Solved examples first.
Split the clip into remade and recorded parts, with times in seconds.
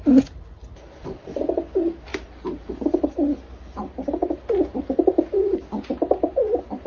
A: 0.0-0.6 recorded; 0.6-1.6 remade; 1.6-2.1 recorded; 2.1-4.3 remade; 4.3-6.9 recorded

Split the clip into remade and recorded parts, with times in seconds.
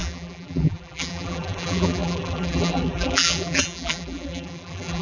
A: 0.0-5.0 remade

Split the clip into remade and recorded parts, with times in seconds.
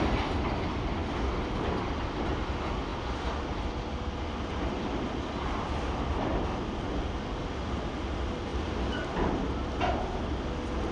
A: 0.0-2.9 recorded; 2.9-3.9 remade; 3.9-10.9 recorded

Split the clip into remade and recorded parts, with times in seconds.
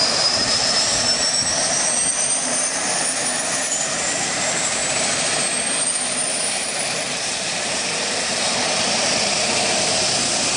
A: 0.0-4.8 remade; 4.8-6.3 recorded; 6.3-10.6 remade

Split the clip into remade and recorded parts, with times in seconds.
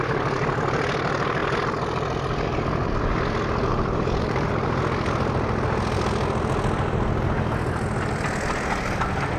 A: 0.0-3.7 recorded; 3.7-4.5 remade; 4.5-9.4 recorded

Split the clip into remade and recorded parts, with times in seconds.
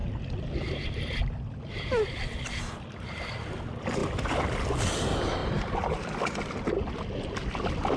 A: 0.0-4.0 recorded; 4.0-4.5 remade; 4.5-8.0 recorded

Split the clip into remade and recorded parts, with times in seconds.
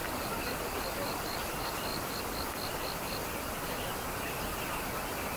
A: 0.0-1.5 remade; 1.5-1.9 recorded; 1.9-4.4 remade; 4.4-5.4 recorded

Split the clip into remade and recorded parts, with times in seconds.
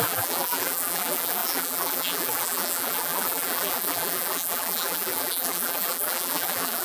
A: 0.0-6.8 remade